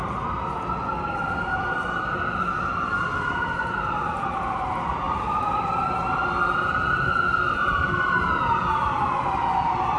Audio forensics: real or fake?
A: real